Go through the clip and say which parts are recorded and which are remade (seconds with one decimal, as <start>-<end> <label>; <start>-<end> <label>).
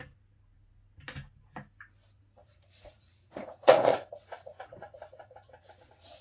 0.0-2.4 recorded; 2.4-6.2 remade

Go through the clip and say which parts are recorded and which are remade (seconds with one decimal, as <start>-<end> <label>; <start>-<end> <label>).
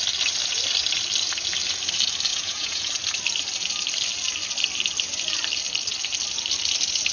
0.0-2.3 recorded; 2.3-2.9 remade; 2.9-7.1 recorded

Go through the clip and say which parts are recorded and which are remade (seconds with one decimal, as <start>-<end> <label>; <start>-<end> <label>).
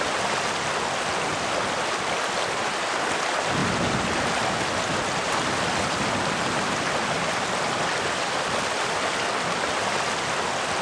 0.0-10.8 recorded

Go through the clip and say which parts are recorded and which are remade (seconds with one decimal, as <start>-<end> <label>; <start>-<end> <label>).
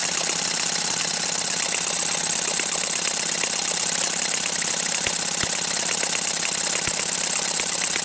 0.0-8.0 recorded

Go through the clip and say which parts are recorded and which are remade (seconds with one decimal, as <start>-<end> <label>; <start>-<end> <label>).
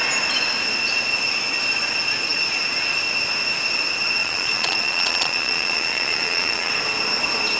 0.0-4.2 recorded; 4.2-6.7 remade; 6.7-7.6 recorded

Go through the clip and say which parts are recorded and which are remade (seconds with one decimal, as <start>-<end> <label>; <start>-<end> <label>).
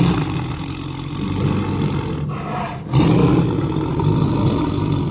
0.0-5.1 recorded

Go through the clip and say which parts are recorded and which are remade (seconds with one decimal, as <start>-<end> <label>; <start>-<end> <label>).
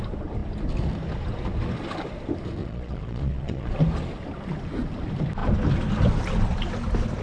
0.0-2.6 recorded; 2.6-3.7 remade; 3.7-7.2 recorded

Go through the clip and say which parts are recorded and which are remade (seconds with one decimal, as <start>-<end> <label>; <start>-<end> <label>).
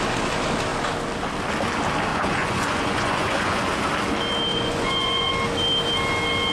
0.0-2.1 recorded; 2.1-3.7 remade; 3.7-4.5 recorded; 4.5-5.3 remade; 5.3-6.5 recorded